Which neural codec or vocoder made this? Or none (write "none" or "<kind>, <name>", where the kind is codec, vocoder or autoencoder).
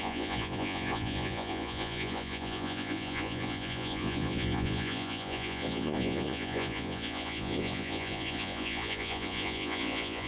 vocoder, Vocos